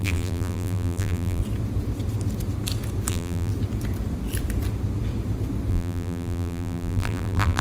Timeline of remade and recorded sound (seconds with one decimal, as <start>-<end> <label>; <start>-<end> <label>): 0.0-1.4 remade; 1.4-3.1 recorded; 3.1-3.5 remade; 3.5-5.7 recorded; 5.7-7.6 remade